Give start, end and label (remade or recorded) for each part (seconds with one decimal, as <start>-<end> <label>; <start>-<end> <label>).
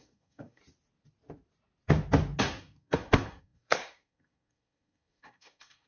0.0-0.6 remade; 0.6-2.4 recorded; 2.4-5.9 remade